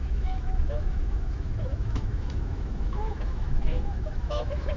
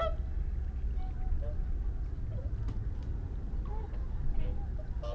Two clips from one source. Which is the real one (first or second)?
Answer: second